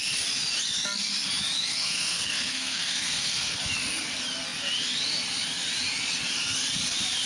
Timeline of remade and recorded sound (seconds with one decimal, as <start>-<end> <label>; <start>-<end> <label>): 0.0-1.7 recorded; 1.7-3.6 remade; 3.6-7.2 recorded